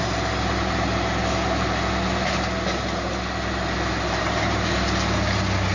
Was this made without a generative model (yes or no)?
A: yes